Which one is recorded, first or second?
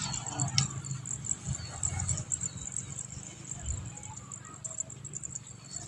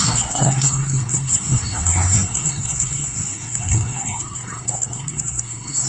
first